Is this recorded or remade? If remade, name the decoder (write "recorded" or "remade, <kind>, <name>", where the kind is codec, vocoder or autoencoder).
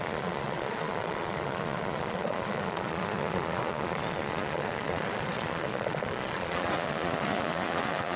remade, vocoder, Vocos